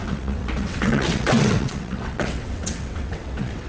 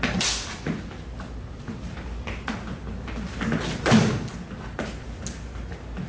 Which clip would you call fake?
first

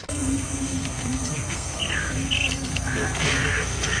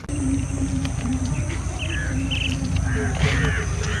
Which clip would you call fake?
first